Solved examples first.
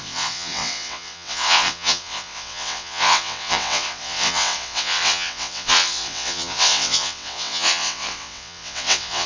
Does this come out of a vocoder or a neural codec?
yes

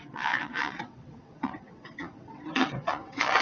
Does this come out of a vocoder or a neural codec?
yes